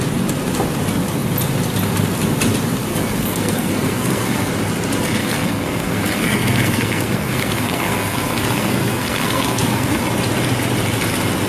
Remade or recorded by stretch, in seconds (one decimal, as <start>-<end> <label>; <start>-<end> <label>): 0.0-2.9 recorded; 2.9-4.5 remade; 4.5-5.2 recorded; 5.2-10.0 remade; 10.0-11.5 recorded